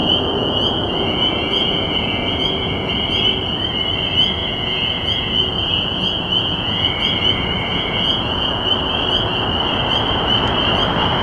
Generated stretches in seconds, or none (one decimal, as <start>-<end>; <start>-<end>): 0.0-2.9; 4.4-6.9; 7.7-8.7